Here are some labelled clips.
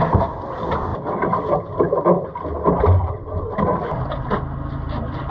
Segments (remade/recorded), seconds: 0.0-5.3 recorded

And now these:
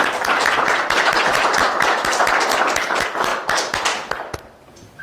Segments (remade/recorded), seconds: 0.0-5.0 recorded

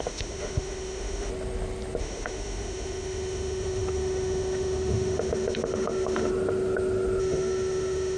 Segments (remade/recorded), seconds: 0.0-1.3 remade; 1.3-2.0 recorded; 2.0-6.3 remade; 6.3-7.2 recorded; 7.2-8.2 remade

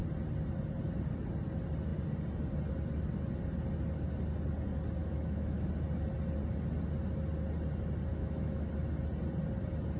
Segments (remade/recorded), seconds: 0.0-5.0 recorded; 5.0-5.7 remade; 5.7-8.1 recorded; 8.1-8.7 remade; 8.7-10.0 recorded

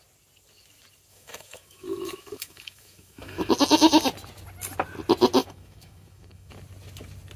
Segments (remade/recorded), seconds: 0.0-1.1 recorded; 1.1-3.5 remade; 3.5-5.4 recorded; 5.4-6.5 remade; 6.5-7.4 recorded

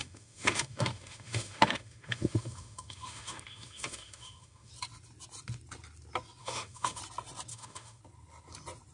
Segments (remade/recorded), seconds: 0.0-4.7 remade; 4.7-6.4 recorded; 6.4-7.0 remade; 7.0-7.5 recorded; 7.5-8.0 remade; 8.0-8.9 recorded

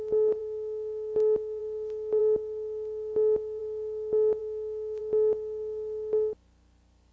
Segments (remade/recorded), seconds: 0.0-0.4 recorded; 0.4-1.6 remade; 1.6-4.4 recorded; 4.4-5.0 remade; 5.0-7.1 recorded

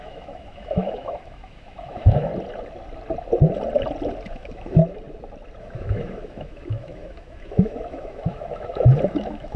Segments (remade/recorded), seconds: 0.0-2.3 remade; 2.3-4.3 recorded; 4.3-4.8 remade; 4.8-5.6 recorded; 5.6-9.6 remade